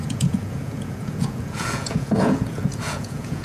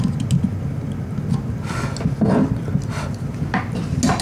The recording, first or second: second